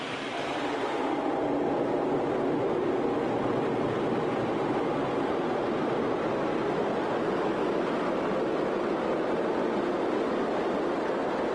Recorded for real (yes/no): yes